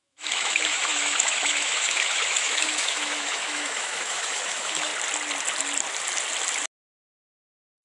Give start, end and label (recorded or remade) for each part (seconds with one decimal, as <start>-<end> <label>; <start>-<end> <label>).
0.0-4.9 remade; 4.9-7.2 recorded; 7.2-7.8 remade